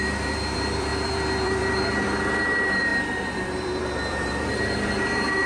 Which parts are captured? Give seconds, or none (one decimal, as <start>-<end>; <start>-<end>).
none